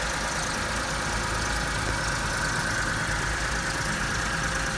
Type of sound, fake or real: real